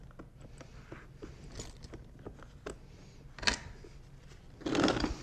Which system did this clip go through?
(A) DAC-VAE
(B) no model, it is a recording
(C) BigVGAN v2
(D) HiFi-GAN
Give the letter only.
B